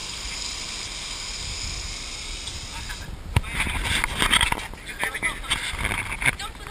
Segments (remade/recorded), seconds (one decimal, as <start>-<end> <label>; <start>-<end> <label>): 0.0-0.6 remade; 0.6-2.5 recorded; 2.5-5.1 remade; 5.1-6.7 recorded